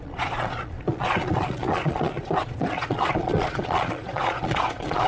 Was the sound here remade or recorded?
remade